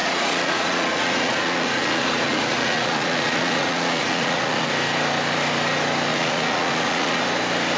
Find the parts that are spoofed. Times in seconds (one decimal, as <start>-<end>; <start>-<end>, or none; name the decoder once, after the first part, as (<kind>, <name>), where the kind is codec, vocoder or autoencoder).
0.0-4.7 (vocoder, Vocos); 6.1-7.2